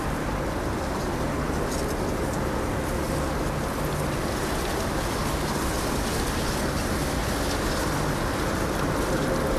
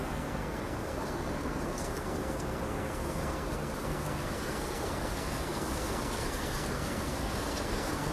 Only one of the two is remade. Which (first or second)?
second